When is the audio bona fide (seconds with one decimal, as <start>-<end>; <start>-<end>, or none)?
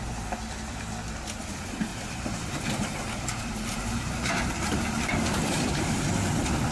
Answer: 0.0-1.9; 5.9-6.7